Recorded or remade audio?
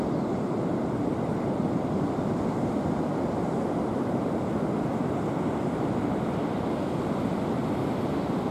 recorded